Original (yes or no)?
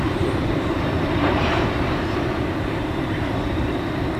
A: no